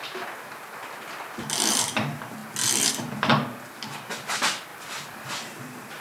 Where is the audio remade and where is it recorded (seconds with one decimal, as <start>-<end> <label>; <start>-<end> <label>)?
0.0-2.4 remade; 2.4-2.9 recorded; 2.9-3.3 remade; 3.3-4.2 recorded; 4.2-4.7 remade; 4.7-5.3 recorded; 5.3-6.0 remade